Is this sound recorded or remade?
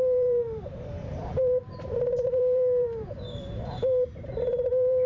remade